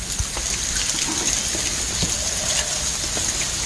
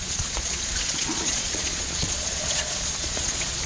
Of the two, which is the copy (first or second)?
second